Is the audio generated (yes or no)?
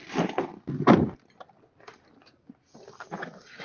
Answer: no